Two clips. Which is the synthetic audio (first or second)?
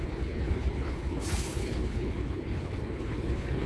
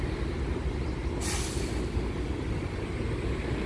first